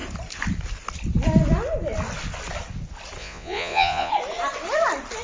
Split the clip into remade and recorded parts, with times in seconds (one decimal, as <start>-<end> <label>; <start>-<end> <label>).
0.0-3.2 recorded; 3.2-4.1 remade; 4.1-5.2 recorded